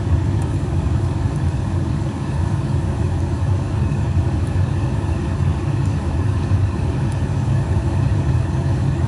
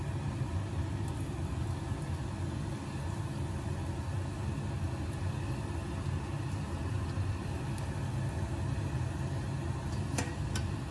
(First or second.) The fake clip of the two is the first